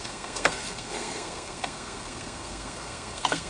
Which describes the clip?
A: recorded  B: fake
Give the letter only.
B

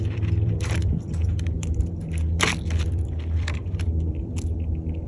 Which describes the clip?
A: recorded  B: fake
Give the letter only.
B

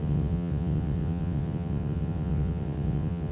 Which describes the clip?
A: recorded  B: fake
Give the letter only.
B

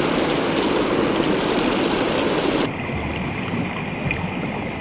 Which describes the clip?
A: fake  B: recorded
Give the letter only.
B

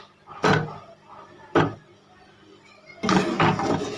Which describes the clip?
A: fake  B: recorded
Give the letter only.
B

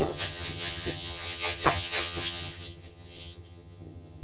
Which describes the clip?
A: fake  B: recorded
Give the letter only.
A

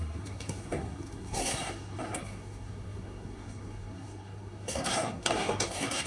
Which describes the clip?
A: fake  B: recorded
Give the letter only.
A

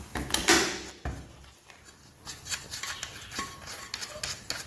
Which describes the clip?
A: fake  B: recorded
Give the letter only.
B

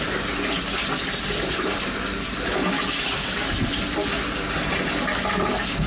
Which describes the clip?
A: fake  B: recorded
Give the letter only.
B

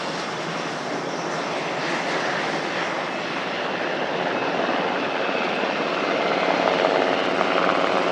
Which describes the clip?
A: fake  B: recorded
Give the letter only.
B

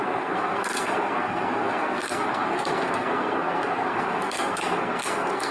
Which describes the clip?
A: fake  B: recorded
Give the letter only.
A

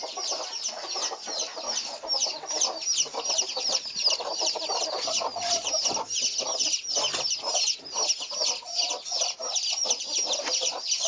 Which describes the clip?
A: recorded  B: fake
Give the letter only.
A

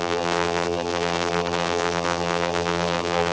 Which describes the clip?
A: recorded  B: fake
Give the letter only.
B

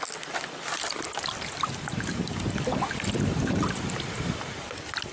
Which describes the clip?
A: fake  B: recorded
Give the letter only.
B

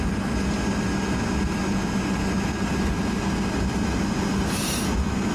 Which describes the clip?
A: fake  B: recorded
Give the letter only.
B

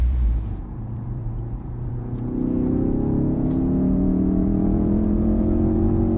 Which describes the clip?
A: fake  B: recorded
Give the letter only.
A